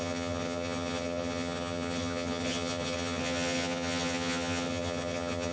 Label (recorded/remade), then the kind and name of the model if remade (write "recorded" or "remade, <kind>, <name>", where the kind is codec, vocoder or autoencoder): remade, vocoder, HiFi-GAN